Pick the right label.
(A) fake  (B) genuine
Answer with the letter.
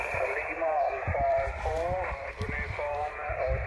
A